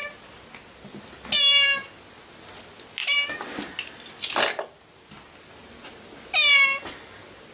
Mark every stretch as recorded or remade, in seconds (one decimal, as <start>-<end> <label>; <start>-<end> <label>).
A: 0.0-7.5 recorded